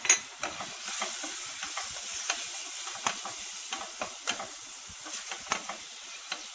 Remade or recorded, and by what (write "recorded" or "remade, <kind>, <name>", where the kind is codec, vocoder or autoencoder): recorded